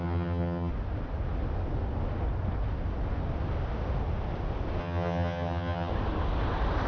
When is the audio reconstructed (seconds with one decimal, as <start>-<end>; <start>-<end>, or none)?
0.0-0.7; 4.8-5.9